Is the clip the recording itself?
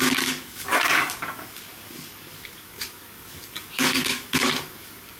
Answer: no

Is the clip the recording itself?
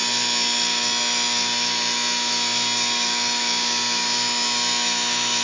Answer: no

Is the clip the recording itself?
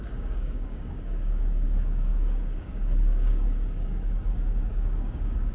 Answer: no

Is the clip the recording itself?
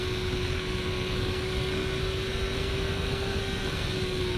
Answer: no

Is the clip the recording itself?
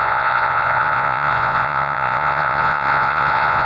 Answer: no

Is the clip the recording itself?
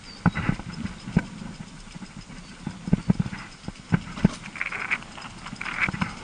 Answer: yes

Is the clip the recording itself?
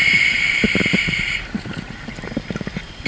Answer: yes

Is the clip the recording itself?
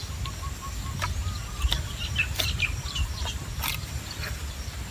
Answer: yes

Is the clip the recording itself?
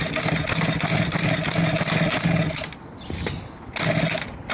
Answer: yes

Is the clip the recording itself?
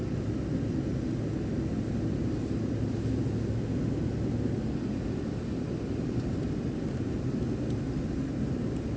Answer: yes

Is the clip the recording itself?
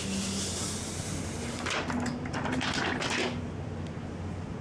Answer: yes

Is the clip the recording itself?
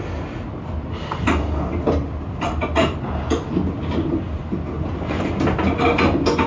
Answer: yes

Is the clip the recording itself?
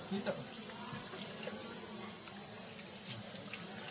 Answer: yes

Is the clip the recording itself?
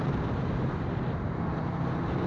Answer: no